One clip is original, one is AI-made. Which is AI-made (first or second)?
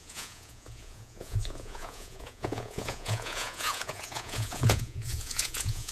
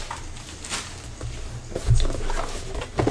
first